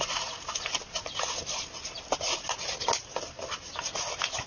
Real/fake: real